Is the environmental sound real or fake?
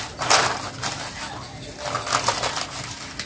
real